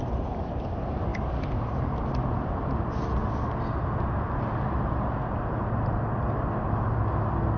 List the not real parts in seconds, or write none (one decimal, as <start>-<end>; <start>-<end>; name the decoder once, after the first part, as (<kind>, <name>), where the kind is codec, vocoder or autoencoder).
none